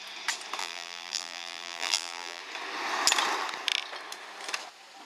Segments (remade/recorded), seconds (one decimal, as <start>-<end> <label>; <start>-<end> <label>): 0.0-0.6 recorded; 0.6-2.4 remade; 2.4-5.1 recorded